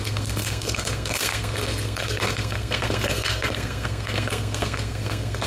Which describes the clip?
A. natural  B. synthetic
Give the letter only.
B